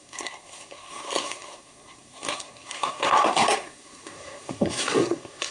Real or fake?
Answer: fake